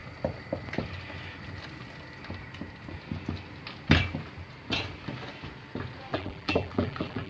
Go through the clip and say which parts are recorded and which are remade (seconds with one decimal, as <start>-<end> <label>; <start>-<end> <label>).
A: 0.0-6.1 recorded; 6.1-7.3 remade